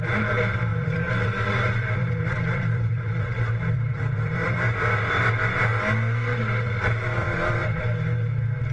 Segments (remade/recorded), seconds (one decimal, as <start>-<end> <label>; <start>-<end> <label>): 0.0-0.7 recorded; 0.7-5.2 remade; 5.2-7.2 recorded; 7.2-7.8 remade; 7.8-8.7 recorded